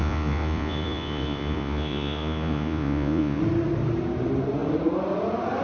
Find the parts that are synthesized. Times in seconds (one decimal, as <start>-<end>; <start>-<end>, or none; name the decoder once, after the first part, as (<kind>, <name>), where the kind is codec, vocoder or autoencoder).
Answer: 0.0-3.4 (vocoder, Vocos)